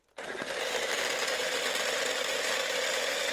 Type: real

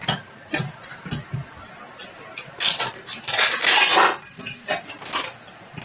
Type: real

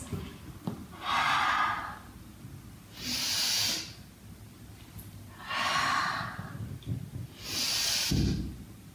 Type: real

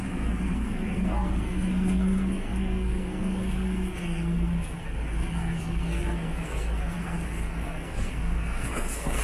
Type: fake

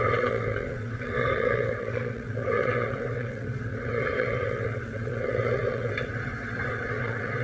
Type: fake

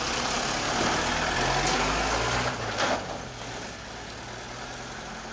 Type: real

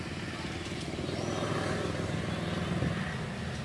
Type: real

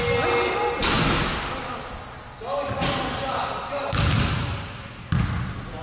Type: real